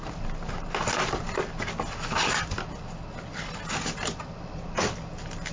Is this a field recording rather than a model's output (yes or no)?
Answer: yes